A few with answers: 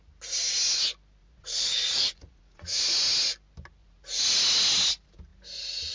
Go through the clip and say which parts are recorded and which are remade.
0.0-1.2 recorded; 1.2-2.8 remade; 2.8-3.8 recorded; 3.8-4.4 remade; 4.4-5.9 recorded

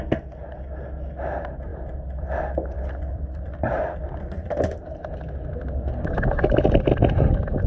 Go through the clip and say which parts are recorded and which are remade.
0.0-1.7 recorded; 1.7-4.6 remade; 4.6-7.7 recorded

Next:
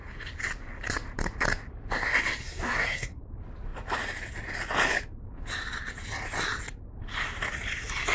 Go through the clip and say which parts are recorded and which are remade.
0.0-2.4 recorded; 2.4-3.2 remade; 3.2-8.1 recorded

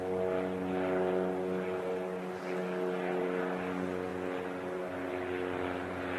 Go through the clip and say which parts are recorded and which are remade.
0.0-6.2 recorded